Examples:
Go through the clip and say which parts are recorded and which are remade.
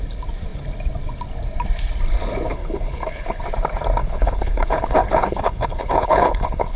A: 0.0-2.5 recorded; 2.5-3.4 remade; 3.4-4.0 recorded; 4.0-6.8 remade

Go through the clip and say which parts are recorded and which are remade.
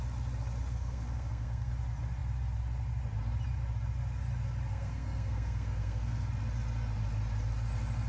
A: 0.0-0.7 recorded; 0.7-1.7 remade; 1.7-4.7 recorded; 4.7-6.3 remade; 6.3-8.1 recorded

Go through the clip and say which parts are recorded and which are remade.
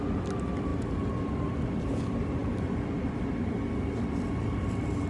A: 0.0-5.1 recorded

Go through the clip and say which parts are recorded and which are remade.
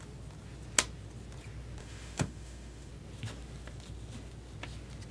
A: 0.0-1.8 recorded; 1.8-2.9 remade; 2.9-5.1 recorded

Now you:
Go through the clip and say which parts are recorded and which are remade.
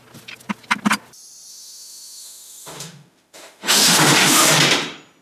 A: 0.0-1.5 recorded; 1.5-4.6 remade; 4.6-5.2 recorded